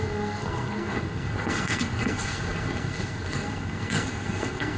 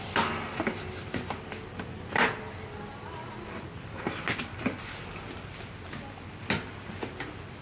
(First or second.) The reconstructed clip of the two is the first